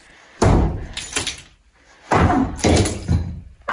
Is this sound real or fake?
real